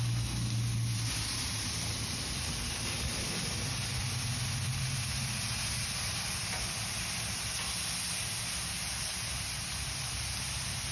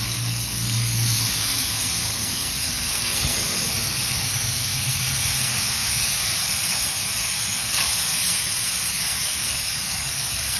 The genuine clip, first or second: first